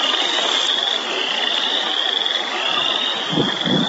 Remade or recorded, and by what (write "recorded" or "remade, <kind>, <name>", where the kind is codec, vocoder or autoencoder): recorded